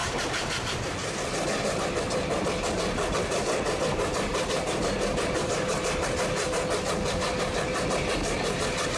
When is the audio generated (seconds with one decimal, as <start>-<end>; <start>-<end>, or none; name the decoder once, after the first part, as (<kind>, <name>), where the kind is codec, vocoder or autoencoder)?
0.0-0.8 (vocoder, BigVGAN v2); 4.3-5.5